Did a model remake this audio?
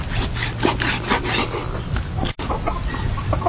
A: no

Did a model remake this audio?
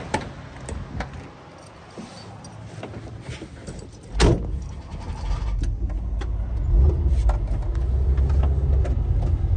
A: no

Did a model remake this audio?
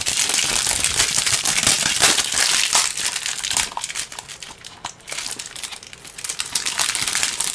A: no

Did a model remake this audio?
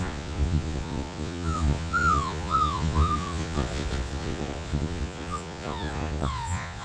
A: yes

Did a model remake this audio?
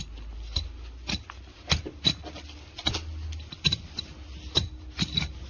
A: no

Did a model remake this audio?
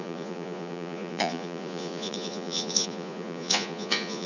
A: yes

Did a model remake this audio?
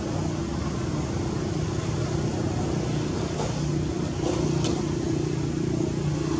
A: no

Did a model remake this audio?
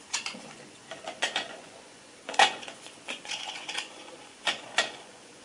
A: yes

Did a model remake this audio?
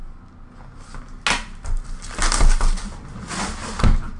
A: no